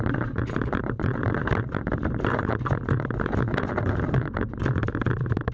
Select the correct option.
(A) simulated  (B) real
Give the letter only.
A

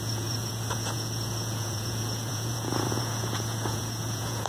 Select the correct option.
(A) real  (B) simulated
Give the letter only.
B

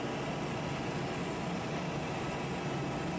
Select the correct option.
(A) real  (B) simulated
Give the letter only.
A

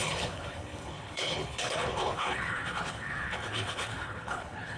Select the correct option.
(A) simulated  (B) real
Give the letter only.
A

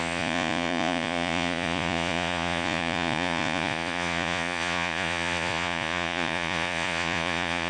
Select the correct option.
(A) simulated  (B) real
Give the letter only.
A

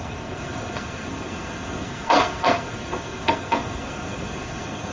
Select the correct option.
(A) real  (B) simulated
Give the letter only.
B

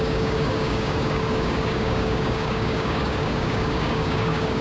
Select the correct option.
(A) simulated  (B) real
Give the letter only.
A